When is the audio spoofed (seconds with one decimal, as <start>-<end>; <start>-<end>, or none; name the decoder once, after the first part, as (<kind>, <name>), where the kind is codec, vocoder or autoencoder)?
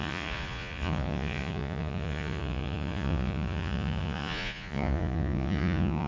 0.0-6.1 (vocoder, Vocos)